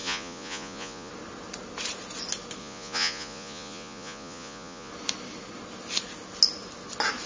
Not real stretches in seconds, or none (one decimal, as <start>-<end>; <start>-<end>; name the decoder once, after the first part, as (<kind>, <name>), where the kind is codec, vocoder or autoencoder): 0.0-1.1 (vocoder, Vocos); 2.6-4.9